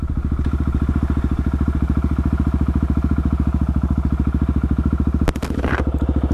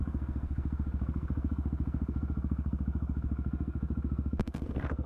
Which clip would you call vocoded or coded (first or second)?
second